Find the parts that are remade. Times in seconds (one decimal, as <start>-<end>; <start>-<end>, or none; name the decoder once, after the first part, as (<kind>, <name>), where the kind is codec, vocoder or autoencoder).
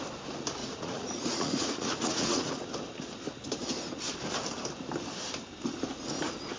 0.6-2.5 (vocoder, Vocos)